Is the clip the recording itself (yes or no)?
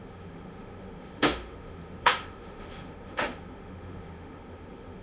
no